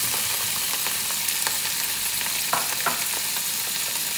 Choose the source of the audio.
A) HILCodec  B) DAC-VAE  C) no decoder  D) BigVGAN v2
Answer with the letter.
C